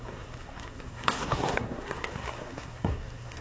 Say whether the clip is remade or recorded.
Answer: remade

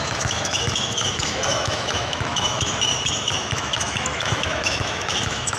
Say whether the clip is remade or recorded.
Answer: remade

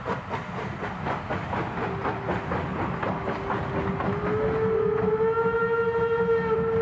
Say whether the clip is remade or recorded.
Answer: recorded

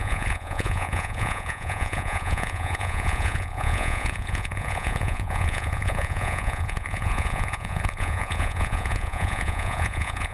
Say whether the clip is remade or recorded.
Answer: remade